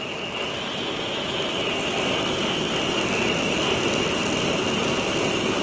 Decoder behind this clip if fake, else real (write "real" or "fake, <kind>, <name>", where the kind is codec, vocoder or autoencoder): real